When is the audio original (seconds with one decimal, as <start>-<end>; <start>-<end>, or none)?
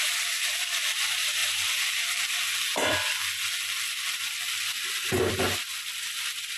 0.0-1.4; 5.4-6.6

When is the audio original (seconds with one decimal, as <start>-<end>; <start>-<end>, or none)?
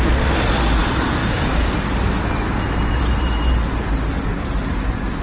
0.0-0.8; 3.9-4.3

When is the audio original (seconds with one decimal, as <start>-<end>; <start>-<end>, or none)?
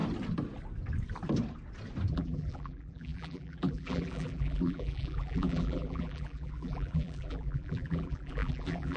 0.0-2.1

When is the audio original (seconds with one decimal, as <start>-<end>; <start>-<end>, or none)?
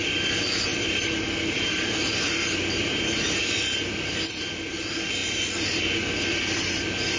0.0-0.7; 4.7-5.2; 5.8-7.2